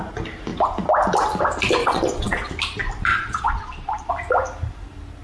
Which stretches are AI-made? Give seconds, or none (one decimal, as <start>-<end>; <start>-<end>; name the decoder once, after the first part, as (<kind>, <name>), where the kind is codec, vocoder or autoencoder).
1.8-2.5 (vocoder, Vocos); 3.1-4.1